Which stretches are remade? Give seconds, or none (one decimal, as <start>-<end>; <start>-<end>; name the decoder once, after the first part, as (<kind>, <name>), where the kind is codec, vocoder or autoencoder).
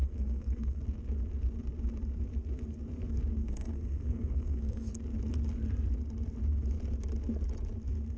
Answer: 0.0-0.8 (codec, SNAC); 3.4-4.9